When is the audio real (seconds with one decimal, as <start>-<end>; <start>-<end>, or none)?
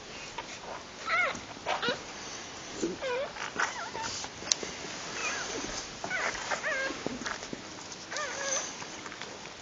0.0-9.6